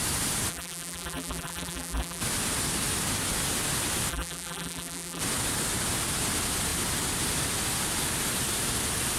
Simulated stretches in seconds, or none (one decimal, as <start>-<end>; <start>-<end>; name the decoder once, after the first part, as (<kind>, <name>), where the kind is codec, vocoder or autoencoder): 0.5-2.2 (vocoder, BigVGAN v2); 4.1-5.2